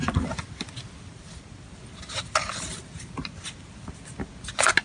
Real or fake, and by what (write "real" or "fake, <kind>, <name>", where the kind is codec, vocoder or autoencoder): real